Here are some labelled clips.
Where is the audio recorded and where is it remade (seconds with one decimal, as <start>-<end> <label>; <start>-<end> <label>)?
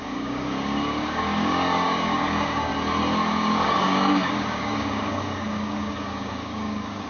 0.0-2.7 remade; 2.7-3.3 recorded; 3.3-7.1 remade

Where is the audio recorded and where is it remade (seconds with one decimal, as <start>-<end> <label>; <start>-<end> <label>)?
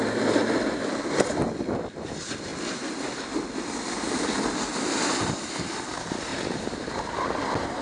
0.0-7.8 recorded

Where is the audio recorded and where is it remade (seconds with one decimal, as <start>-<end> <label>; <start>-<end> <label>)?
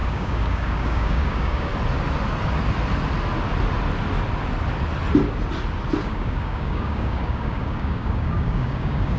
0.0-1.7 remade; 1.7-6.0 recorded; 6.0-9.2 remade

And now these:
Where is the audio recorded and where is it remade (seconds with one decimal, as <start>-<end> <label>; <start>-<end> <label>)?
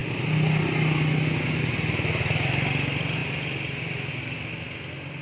0.0-5.2 recorded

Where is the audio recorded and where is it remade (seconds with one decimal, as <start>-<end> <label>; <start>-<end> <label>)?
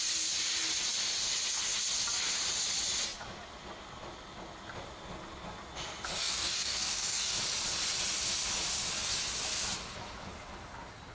0.0-6.2 recorded; 6.2-7.4 remade; 7.4-11.1 recorded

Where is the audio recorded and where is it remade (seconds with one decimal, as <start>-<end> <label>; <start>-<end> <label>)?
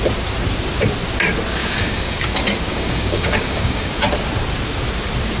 0.0-1.6 recorded; 1.6-2.2 remade; 2.2-2.7 recorded; 2.7-3.9 remade; 3.9-5.4 recorded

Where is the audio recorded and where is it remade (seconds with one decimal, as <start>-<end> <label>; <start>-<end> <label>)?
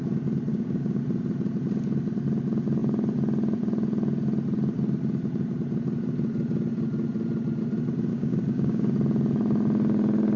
0.0-0.5 recorded; 0.5-1.0 remade; 1.0-8.1 recorded; 8.1-8.9 remade; 8.9-10.4 recorded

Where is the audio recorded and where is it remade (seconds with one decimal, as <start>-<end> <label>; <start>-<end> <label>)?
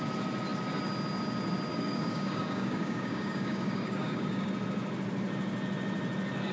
0.0-1.7 recorded; 1.7-4.5 remade; 4.5-6.5 recorded